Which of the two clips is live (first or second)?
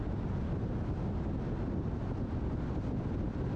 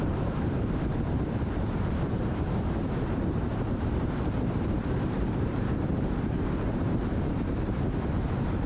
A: first